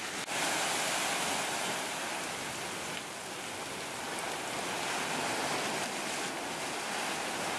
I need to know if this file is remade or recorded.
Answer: recorded